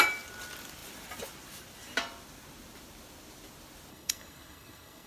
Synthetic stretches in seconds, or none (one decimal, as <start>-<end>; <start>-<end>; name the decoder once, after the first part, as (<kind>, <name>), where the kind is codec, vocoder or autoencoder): 3.9-5.1 (codec, SNAC)